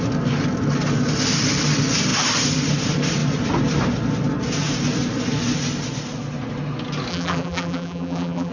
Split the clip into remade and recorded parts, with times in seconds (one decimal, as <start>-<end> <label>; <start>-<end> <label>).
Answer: 0.0-7.1 recorded; 7.1-8.5 remade